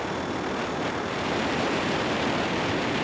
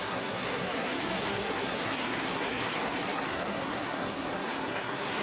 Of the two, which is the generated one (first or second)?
second